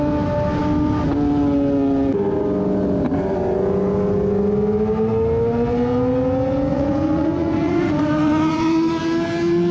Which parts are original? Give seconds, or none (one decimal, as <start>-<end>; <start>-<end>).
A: 0.0-6.7; 8.9-9.7